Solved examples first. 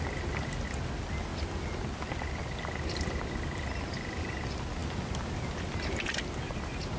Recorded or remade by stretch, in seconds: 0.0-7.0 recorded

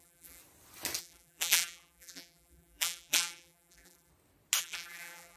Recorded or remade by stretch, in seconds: 0.0-0.4 remade; 0.4-1.0 recorded; 1.0-4.1 remade; 4.1-4.6 recorded; 4.6-5.4 remade

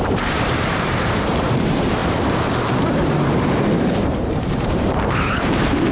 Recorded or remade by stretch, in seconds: 0.0-2.0 remade; 2.0-2.7 recorded; 2.7-5.9 remade

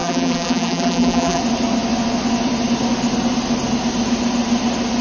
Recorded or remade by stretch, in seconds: 0.0-1.4 remade; 1.4-5.0 recorded

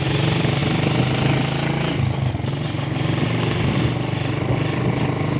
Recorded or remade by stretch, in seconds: 0.0-5.4 recorded

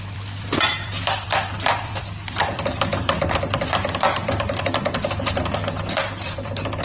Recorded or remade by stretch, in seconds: 0.0-6.8 remade

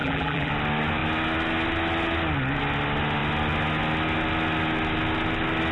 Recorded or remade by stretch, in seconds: 0.0-0.5 remade; 0.5-5.7 recorded

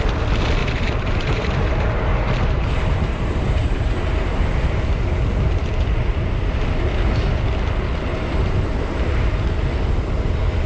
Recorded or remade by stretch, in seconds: 0.0-0.6 recorded; 0.6-4.8 remade; 4.8-8.1 recorded; 8.1-9.1 remade; 9.1-10.7 recorded